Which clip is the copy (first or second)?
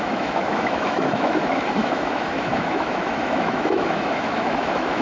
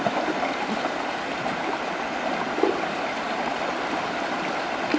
first